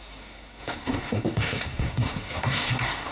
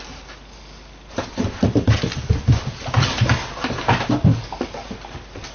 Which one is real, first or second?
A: second